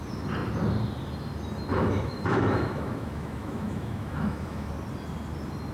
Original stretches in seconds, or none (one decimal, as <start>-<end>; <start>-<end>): 0.0-1.7; 4.7-5.7